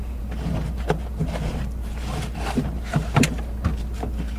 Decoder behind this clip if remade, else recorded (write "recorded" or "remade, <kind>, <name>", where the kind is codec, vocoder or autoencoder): remade, vocoder, BigVGAN v2